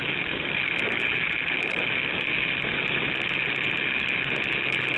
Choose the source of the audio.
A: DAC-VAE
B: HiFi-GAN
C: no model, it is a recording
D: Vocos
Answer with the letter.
A